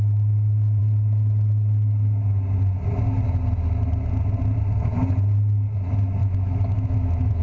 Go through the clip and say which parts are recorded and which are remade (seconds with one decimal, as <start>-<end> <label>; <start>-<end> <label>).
0.0-6.2 recorded; 6.2-7.4 remade